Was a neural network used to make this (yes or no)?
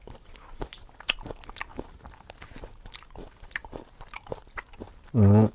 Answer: no